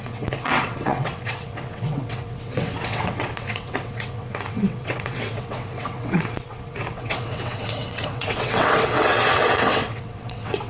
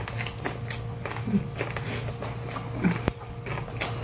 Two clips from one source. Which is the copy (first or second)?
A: first